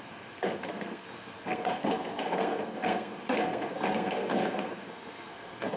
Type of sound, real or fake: fake